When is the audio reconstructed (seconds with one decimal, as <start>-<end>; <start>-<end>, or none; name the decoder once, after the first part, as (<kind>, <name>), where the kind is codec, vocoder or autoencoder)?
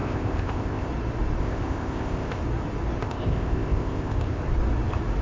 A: 0.0-0.9 (codec, ZipCodec); 1.4-2.4; 3.0-4.4